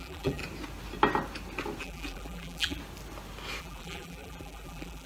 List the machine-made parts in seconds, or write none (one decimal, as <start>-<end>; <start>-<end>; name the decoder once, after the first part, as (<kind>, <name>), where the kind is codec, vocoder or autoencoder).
0.0-0.4 (vocoder, BigVGAN v2); 1.8-2.8; 3.6-5.1